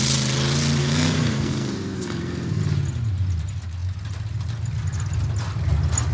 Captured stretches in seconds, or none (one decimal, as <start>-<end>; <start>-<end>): 0.0-0.8; 2.6-6.1